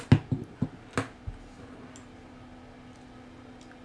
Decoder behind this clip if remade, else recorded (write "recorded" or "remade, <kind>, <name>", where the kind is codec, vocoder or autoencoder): recorded